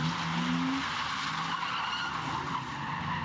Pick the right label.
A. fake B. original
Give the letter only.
B